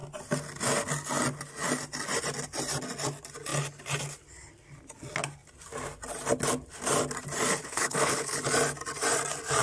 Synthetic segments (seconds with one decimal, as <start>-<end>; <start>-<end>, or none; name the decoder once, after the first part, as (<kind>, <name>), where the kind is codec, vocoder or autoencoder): 7.6-8.4 (codec, HILCodec)